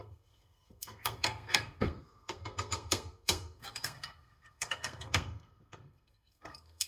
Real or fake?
fake